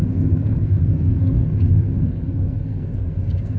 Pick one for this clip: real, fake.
fake